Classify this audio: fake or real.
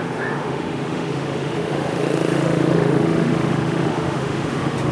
fake